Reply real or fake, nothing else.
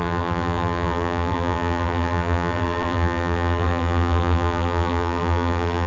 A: fake